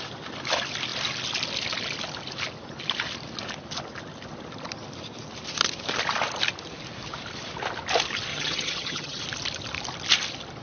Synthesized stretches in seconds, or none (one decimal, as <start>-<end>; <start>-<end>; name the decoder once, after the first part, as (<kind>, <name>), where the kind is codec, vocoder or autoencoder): 8.3-9.2 (vocoder, HiFi-GAN)